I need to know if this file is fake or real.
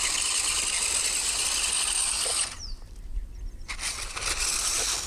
real